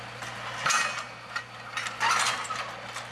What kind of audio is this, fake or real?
real